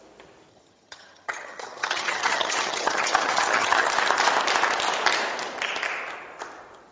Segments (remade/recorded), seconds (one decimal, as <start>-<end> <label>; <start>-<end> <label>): 0.0-0.5 recorded; 0.5-3.9 remade; 3.9-6.9 recorded